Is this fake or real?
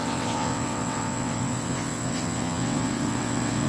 fake